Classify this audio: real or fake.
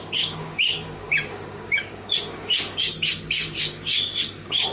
fake